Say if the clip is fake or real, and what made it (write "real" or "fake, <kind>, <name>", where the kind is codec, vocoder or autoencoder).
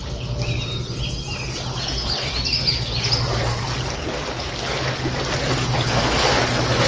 real